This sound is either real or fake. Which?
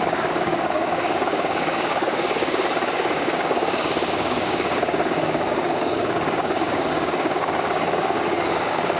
fake